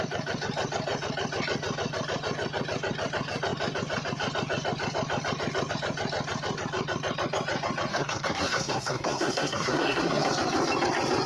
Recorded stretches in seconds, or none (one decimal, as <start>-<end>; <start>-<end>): 0.0-7.9; 10.3-11.3